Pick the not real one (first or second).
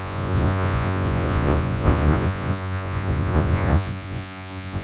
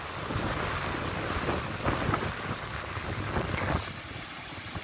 first